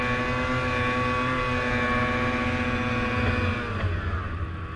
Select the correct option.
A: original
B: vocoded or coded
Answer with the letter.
A